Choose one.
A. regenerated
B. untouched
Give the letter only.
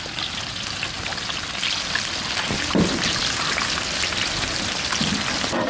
B